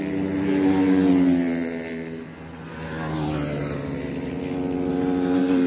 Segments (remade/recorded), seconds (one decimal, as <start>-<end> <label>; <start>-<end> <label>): 0.0-5.7 recorded